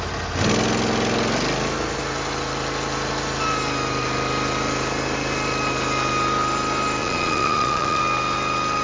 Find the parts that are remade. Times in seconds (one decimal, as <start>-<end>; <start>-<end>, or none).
7.0-8.0